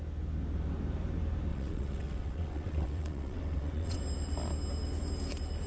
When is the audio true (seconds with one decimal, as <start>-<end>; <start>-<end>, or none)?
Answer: 0.0-1.5; 4.0-5.7